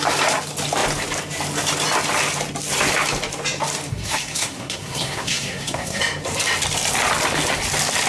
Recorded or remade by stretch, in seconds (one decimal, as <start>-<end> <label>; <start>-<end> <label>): 0.0-3.9 recorded; 3.9-6.0 remade; 6.0-8.1 recorded